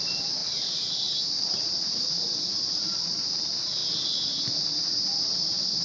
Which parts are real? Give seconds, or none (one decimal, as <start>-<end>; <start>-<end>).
0.0-0.4; 2.6-3.8; 5.0-5.8